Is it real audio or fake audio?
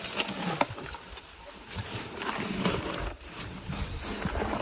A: fake